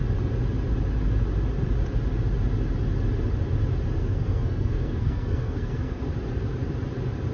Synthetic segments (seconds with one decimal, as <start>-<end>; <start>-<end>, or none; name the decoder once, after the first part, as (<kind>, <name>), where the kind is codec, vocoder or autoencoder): 4.0-6.0 (codec, SNAC)